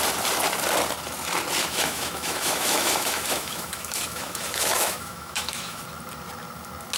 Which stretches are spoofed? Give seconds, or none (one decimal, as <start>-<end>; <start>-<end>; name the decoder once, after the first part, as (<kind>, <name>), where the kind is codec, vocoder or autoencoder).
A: 1.6-5.8 (autoencoder, DAC-VAE)